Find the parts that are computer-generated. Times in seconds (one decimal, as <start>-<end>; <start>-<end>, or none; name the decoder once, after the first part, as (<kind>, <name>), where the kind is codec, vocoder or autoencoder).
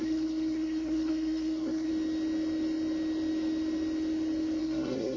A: 0.0-1.9 (codec, SNAC); 4.6-5.2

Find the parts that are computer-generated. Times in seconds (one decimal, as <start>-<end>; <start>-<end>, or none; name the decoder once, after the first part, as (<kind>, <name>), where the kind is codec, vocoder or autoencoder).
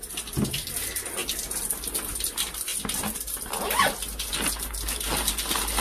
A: none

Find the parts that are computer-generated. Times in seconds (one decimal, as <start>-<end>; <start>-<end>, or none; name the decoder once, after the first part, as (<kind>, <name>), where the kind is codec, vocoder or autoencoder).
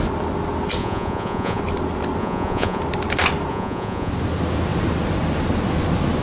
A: 0.8-1.6 (vocoder, Vocos); 2.2-2.8; 3.5-4.1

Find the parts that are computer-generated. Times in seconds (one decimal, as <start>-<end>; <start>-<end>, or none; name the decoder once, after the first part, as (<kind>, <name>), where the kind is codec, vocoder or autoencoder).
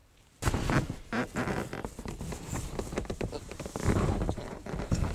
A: 3.1-5.1 (vocoder, BigVGAN v2)